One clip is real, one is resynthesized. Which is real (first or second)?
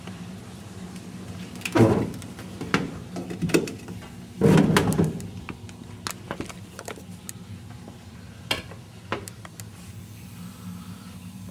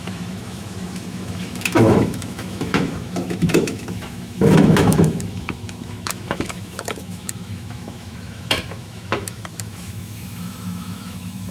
first